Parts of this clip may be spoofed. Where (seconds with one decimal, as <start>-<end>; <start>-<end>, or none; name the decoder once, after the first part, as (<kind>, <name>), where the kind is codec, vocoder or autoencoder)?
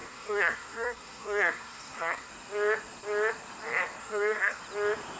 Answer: 0.0-2.3 (codec, SNAC); 4.0-4.6